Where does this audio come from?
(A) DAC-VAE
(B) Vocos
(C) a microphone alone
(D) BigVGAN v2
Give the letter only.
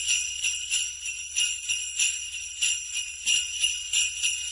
D